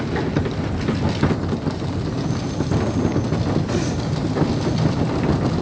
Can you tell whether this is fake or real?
real